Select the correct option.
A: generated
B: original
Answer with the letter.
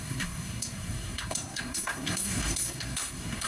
A